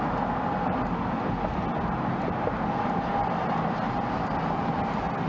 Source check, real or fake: real